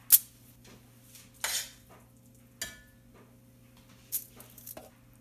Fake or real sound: real